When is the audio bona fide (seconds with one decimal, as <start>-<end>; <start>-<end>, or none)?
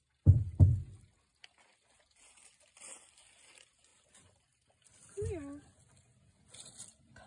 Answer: 0.0-7.3